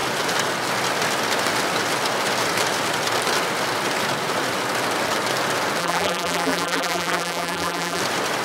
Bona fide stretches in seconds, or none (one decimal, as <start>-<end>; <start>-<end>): 0.0-5.8; 8.0-8.4